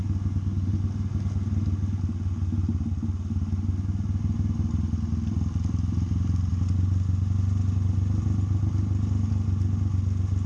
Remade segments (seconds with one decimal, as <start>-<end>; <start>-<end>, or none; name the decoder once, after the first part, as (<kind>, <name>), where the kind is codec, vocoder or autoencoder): none